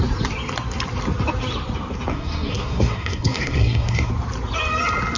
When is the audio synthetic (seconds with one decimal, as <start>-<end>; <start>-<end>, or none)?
2.1-4.1